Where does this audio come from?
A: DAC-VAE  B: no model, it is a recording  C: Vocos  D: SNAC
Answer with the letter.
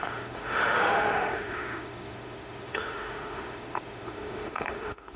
A